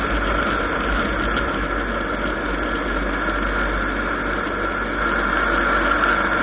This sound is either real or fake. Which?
real